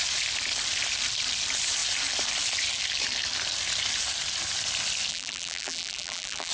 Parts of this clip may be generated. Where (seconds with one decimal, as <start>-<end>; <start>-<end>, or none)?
5.1-6.5